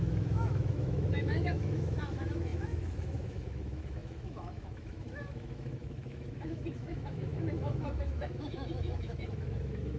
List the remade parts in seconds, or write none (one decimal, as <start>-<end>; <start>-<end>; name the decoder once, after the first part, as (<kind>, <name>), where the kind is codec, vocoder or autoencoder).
0.0-10.0 (autoencoder, DAC-VAE)

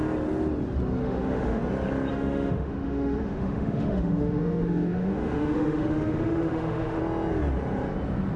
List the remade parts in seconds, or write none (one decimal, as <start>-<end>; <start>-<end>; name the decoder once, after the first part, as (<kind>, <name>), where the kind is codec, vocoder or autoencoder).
1.0-1.6 (autoencoder, DAC-VAE); 2.1-7.0